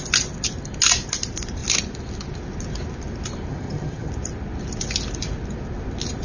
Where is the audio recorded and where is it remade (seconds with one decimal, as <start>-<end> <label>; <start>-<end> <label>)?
0.0-3.5 recorded; 3.5-4.1 remade; 4.1-6.2 recorded